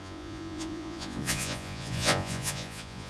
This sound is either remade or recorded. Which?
remade